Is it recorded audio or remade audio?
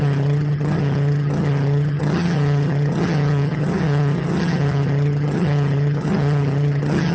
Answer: remade